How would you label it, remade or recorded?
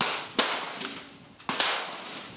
recorded